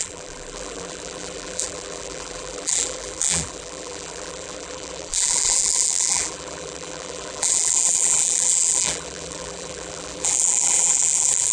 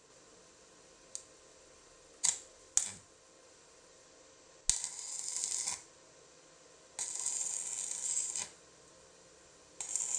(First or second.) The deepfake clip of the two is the first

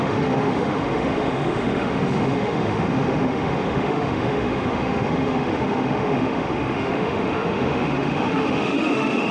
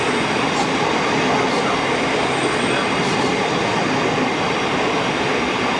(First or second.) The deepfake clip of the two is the first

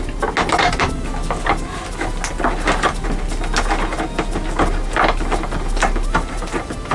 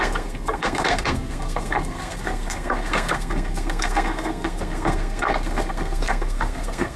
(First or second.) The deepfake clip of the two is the second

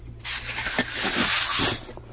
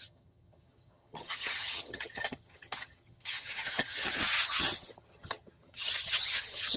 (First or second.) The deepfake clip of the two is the second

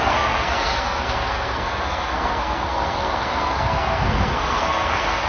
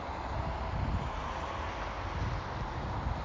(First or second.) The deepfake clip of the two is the first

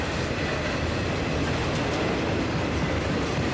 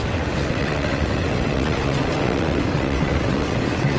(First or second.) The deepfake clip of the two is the second